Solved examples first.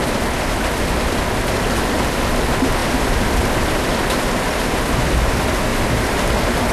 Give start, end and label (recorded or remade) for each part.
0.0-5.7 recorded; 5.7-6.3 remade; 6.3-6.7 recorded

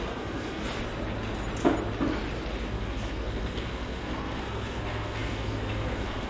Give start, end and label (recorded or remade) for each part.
0.0-0.6 remade; 0.6-2.7 recorded; 2.7-6.3 remade

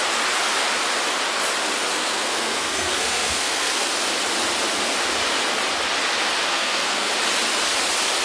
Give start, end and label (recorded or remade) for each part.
0.0-1.9 recorded; 1.9-3.9 remade; 3.9-6.5 recorded; 6.5-7.1 remade; 7.1-8.2 recorded

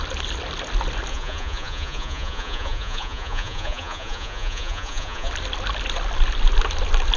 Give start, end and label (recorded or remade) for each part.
0.0-1.1 recorded; 1.1-5.3 remade; 5.3-7.2 recorded

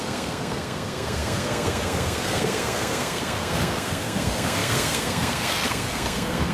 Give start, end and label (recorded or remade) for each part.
0.0-6.5 remade

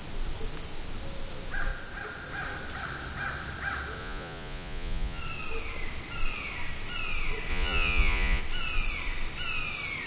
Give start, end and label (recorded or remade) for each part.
0.0-4.0 recorded; 4.0-5.2 remade; 5.2-7.5 recorded; 7.5-8.4 remade; 8.4-10.1 recorded

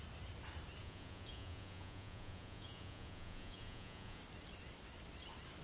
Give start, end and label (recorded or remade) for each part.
0.0-0.8 recorded; 0.8-4.2 remade; 4.2-5.6 recorded